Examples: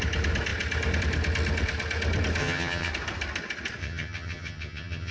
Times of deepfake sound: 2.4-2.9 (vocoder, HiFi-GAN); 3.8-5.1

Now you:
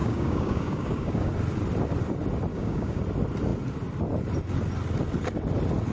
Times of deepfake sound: 0.0-1.3 (codec, DAC); 2.5-3.0

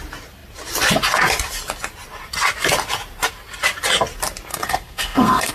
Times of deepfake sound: 4.5-5.5 (codec, SNAC)

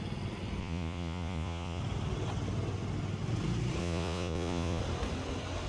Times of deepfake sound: 0.6-1.8 (vocoder, Vocos); 3.8-4.8

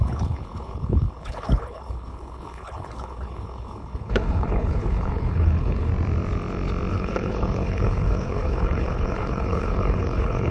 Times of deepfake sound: 0.0-5.9 (codec, HILCodec); 6.9-10.5

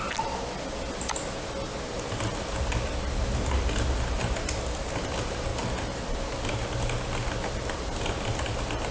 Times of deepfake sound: none

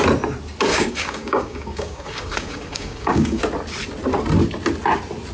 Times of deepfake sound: 0.7-3.4 (codec, DAC)

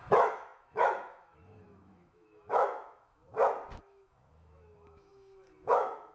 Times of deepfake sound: 0.0-3.2 (autoencoder, DAC-VAE); 3.8-6.1